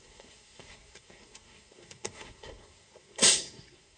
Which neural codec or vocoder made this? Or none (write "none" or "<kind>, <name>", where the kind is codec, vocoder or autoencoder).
codec, SNAC